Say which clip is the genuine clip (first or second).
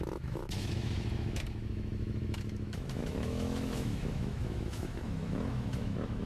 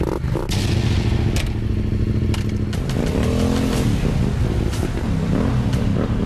second